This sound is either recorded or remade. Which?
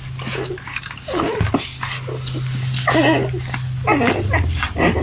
recorded